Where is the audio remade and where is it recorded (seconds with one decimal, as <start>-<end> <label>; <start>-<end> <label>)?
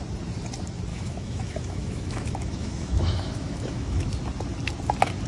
0.0-0.9 recorded; 0.9-4.1 remade; 4.1-5.3 recorded